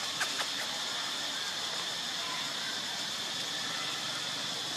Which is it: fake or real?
real